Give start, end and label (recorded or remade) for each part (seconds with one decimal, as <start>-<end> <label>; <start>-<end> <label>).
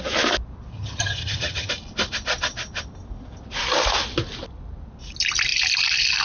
0.0-0.7 recorded; 0.7-1.7 remade; 1.7-6.2 recorded